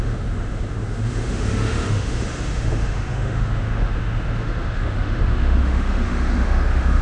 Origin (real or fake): fake